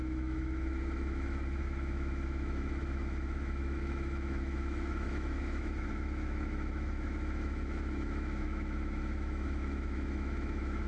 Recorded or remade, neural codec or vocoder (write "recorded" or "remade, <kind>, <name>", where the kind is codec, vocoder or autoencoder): remade, autoencoder, DAC-VAE